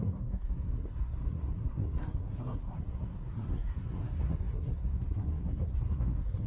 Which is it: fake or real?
fake